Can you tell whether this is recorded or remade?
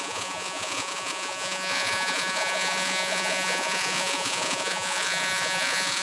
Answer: remade